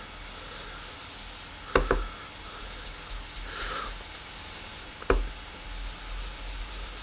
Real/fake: real